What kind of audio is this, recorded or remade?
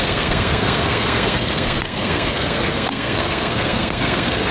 remade